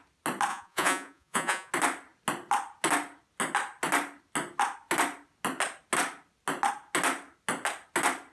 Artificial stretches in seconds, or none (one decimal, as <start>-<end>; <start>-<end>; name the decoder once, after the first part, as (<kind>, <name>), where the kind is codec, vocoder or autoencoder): 0.5-1.7 (vocoder, Vocos)